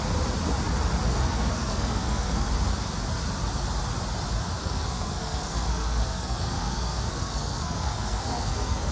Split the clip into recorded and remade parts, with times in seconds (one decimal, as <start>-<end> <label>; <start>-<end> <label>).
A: 0.0-1.1 recorded; 1.1-2.5 remade; 2.5-4.6 recorded; 4.6-8.9 remade